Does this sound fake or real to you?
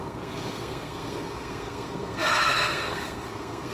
fake